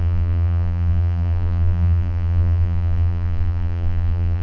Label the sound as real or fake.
fake